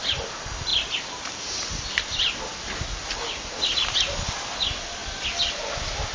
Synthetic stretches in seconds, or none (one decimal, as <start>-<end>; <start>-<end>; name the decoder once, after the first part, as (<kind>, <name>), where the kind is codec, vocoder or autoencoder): none